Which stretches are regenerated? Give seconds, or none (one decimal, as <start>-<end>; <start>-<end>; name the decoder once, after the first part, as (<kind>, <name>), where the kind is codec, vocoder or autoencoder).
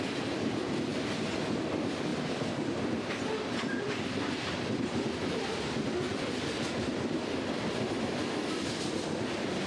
0.0-0.9 (vocoder, BigVGAN v2); 1.5-9.7